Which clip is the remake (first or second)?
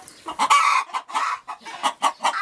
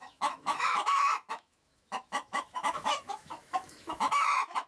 second